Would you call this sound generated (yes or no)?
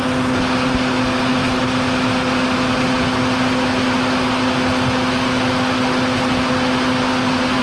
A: no